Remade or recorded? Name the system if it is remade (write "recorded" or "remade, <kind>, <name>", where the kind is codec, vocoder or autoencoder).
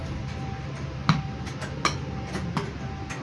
recorded